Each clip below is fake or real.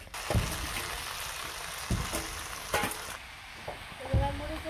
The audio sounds real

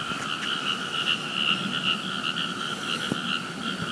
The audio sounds real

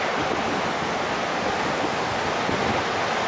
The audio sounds real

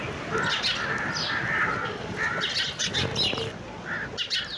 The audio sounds real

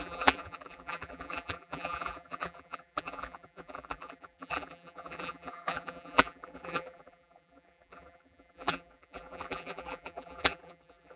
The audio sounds fake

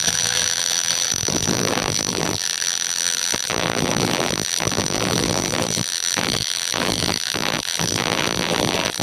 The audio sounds fake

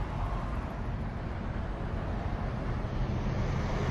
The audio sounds real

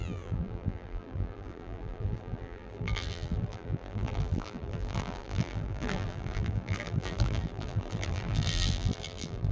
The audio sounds fake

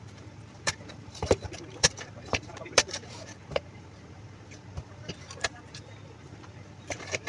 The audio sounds fake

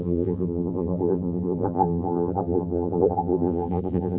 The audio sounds fake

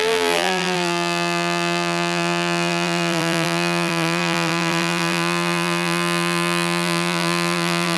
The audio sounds fake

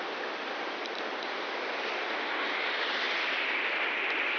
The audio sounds fake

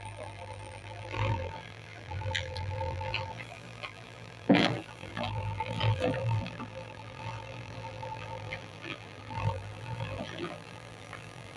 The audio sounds fake